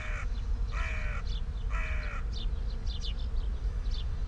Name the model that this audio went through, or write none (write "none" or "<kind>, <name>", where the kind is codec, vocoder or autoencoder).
none